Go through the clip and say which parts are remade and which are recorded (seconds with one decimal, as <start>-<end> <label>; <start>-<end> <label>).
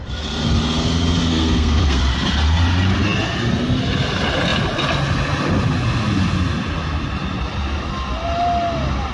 0.0-1.3 recorded; 1.3-2.0 remade; 2.0-9.1 recorded